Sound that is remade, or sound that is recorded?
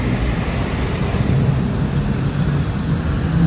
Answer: recorded